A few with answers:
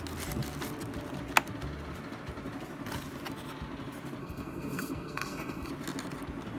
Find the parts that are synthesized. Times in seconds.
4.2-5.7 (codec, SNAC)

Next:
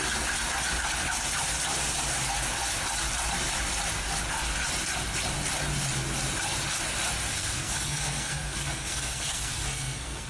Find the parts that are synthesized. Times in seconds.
7.3-10.3 (codec, SNAC)